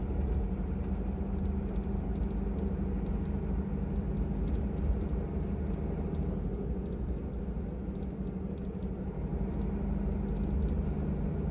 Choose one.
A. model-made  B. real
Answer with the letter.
B